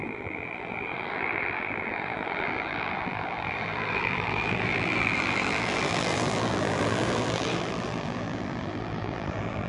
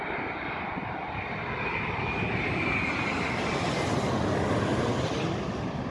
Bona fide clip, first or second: second